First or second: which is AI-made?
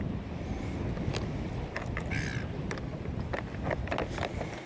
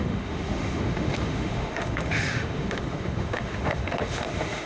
second